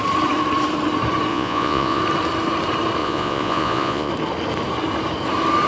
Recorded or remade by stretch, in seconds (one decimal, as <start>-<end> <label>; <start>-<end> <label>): 0.0-1.3 recorded; 1.3-2.0 remade; 2.0-3.0 recorded; 3.0-4.1 remade; 4.1-5.7 recorded